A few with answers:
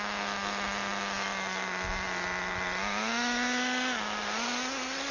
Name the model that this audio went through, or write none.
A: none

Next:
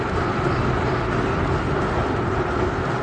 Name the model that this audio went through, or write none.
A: none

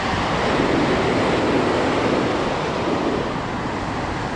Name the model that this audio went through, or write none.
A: none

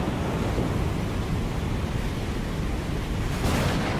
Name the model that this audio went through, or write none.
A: none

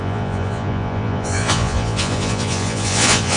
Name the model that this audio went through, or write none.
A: vocoder, Vocos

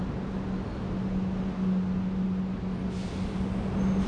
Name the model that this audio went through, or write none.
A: none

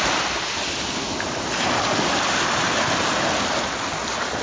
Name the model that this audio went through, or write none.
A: none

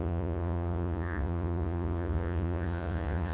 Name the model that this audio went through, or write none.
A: vocoder, Vocos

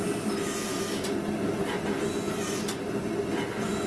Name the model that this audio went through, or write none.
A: none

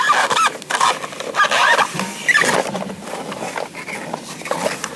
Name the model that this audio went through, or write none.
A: none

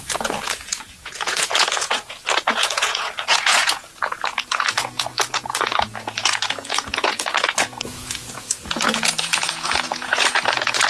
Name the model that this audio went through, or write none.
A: vocoder, Vocos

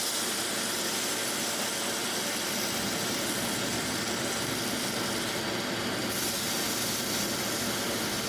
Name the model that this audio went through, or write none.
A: none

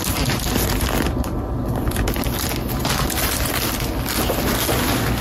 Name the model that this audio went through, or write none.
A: none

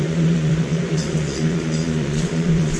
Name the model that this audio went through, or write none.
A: vocoder, Vocos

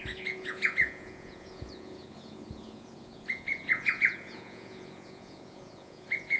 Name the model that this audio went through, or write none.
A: vocoder, Vocos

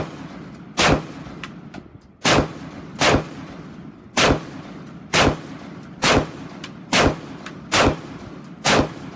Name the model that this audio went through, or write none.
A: none